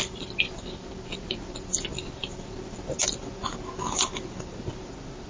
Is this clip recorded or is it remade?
recorded